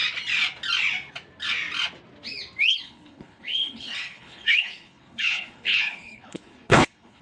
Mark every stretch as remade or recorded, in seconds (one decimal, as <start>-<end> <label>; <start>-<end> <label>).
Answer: 0.0-2.7 recorded; 2.7-7.2 remade